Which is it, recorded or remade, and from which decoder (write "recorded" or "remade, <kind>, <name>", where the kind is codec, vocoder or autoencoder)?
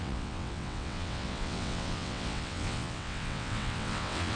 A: remade, vocoder, WaveNeXt